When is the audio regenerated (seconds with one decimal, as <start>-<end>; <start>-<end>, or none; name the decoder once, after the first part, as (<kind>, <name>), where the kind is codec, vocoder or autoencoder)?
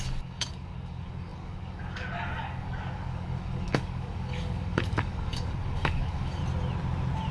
0.0-6.4 (codec, DAC)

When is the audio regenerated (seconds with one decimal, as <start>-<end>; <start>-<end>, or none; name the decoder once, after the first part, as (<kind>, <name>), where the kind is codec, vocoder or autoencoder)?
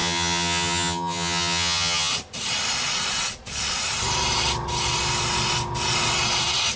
0.0-2.1 (vocoder, HiFi-GAN)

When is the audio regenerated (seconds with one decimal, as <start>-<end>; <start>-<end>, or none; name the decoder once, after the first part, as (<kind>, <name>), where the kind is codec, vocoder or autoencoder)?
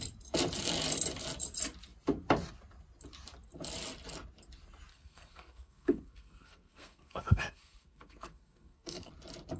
4.9-9.1 (codec, SNAC)